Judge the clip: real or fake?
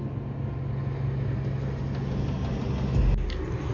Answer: real